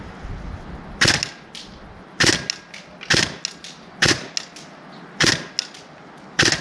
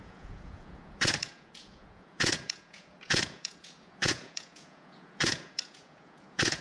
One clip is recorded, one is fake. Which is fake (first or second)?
second